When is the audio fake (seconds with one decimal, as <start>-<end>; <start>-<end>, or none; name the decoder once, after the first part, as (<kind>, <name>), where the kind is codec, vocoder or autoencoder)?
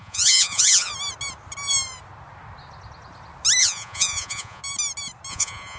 0.0-0.9 (vocoder, Vocos); 3.6-4.6; 5.3-5.8